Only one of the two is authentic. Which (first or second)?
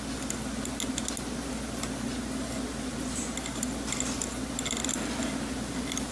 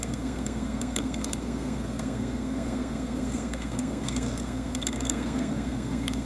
first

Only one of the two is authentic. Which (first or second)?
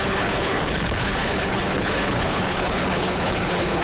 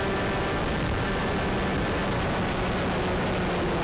second